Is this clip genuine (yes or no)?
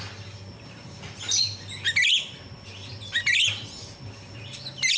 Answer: yes